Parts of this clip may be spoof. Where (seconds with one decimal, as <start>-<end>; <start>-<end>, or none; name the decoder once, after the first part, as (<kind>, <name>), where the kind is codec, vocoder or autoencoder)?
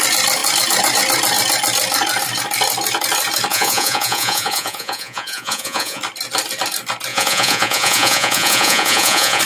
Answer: 3.5-6.0 (vocoder, Vocos); 7.1-9.4